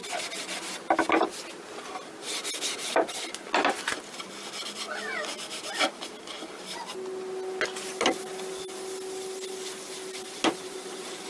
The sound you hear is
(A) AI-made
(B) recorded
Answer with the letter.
B